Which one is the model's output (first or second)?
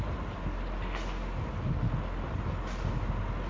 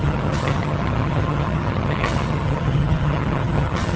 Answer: second